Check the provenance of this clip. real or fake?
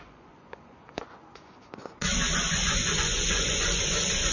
fake